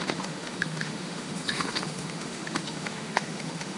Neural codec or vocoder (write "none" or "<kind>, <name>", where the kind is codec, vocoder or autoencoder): autoencoder, DAC-VAE